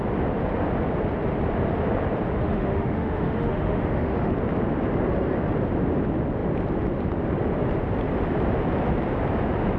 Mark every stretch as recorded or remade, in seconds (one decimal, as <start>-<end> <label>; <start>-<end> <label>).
0.0-2.4 recorded; 2.4-4.3 remade; 4.3-9.8 recorded